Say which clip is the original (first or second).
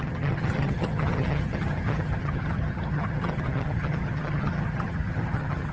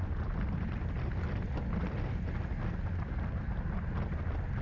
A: second